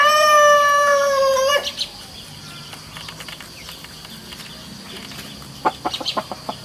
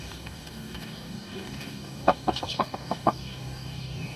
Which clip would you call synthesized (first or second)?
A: second